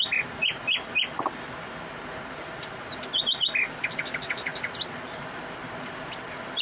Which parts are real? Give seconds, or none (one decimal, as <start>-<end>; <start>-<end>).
0.0-6.6